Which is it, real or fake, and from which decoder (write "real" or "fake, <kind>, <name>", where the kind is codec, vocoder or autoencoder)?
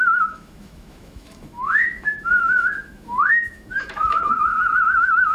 fake, autoencoder, DAC-VAE